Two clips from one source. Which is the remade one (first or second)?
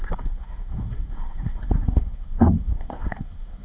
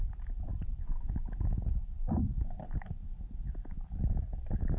first